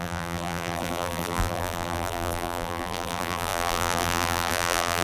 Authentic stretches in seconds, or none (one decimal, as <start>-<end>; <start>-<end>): none